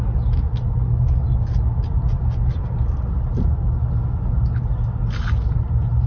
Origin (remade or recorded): recorded